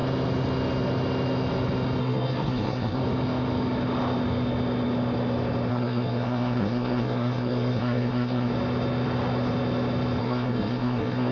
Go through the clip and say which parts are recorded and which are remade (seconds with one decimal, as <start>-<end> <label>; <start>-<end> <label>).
0.0-2.0 recorded; 2.0-3.0 remade; 3.0-5.7 recorded; 5.7-8.5 remade; 8.5-10.2 recorded; 10.2-11.3 remade